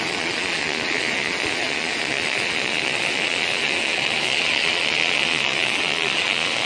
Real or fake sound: fake